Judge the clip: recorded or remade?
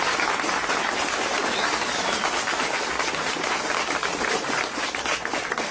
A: recorded